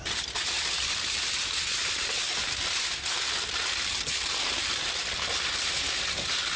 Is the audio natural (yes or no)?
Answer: yes